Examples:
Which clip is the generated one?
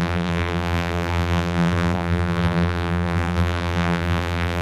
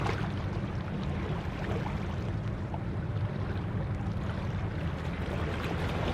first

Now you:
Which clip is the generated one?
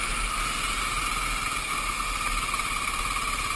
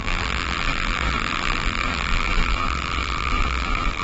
second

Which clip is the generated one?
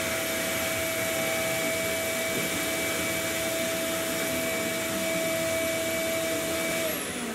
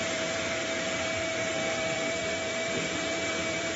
second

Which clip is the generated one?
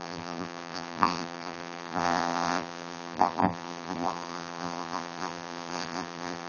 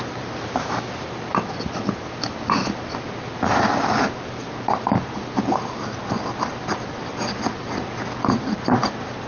first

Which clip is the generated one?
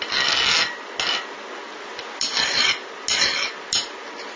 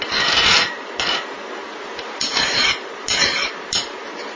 second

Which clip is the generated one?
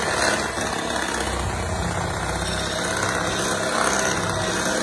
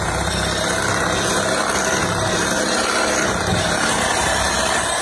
second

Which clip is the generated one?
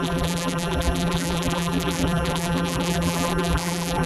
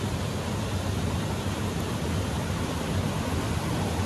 first